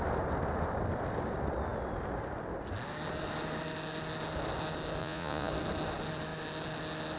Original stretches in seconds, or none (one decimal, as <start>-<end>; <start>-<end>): 0.0-5.0; 5.5-7.2